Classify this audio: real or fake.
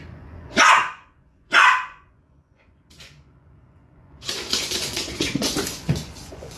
fake